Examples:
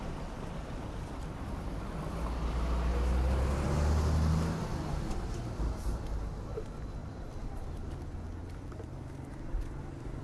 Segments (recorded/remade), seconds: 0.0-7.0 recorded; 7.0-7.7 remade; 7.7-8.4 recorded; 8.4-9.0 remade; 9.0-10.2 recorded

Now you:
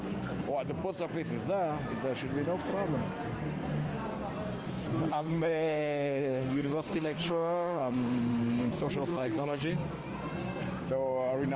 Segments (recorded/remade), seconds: 0.0-5.1 recorded; 5.1-8.7 remade; 8.7-9.1 recorded; 9.1-9.7 remade; 9.7-11.6 recorded

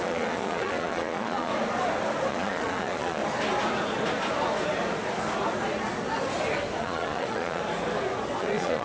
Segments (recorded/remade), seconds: 0.0-1.5 remade; 1.5-2.3 recorded; 2.3-3.2 remade; 3.2-6.8 recorded; 6.8-7.6 remade; 7.6-8.4 recorded; 8.4-8.8 remade

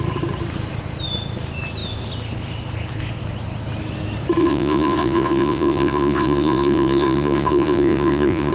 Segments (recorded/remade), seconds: 0.0-4.4 recorded; 4.4-8.5 remade

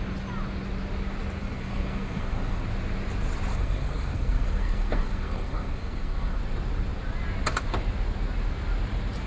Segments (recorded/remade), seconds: 0.0-1.4 recorded; 1.4-2.6 remade; 2.6-3.5 recorded; 3.5-6.4 remade; 6.4-9.3 recorded